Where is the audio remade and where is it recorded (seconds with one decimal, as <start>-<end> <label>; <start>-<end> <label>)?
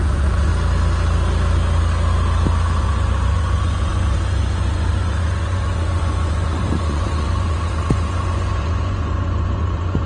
0.0-0.5 remade; 0.5-2.8 recorded; 2.8-10.1 remade